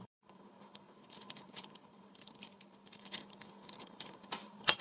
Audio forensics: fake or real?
fake